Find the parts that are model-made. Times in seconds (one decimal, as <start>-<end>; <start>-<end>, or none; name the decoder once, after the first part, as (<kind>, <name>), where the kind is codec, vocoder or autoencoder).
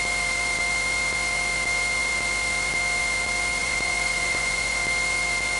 3.6-4.8 (vocoder, Vocos)